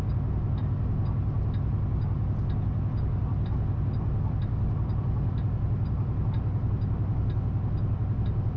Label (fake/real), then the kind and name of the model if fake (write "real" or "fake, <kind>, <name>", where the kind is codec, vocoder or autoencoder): real